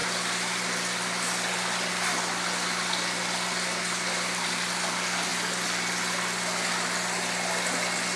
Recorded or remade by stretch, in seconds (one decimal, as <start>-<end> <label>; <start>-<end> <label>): 0.0-8.2 recorded